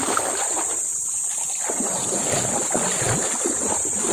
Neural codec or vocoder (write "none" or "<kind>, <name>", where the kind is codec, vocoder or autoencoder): none